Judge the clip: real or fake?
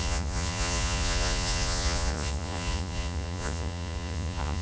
fake